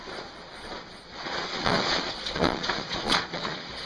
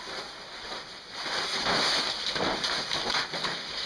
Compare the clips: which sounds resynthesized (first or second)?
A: first